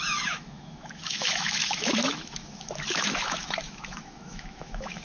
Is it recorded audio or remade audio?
remade